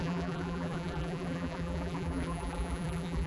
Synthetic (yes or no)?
yes